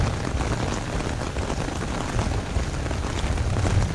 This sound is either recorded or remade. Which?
recorded